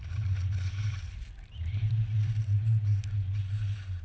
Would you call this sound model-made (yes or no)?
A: no